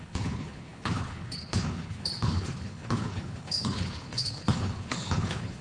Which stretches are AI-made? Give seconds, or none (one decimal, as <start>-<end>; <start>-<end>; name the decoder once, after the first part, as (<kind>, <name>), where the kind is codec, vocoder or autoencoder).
0.0-5.6 (codec, HILCodec)

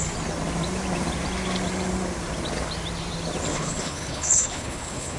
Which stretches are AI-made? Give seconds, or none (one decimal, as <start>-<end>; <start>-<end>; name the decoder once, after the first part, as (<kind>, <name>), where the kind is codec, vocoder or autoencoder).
3.5-5.2 (codec, HILCodec)

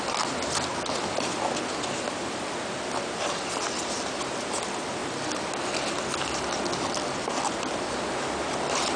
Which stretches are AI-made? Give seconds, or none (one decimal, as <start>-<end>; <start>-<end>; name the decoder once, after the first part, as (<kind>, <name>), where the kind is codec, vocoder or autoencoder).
none

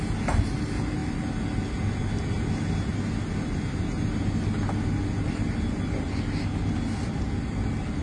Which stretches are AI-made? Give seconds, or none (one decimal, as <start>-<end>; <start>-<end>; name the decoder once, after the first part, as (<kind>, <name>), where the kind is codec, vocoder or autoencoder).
none

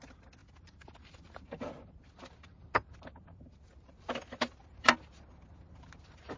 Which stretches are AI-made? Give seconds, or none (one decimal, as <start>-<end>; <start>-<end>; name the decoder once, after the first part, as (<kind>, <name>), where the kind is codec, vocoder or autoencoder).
none

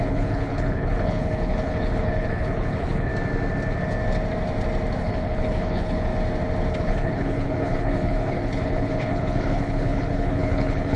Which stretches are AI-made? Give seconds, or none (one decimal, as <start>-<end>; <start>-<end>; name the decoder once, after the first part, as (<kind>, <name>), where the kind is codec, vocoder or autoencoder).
0.0-3.1 (codec, HILCodec); 5.0-6.1; 6.7-11.0

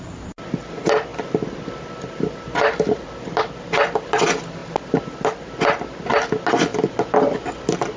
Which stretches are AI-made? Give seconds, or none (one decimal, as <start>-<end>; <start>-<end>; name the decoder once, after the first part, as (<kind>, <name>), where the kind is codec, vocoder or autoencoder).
none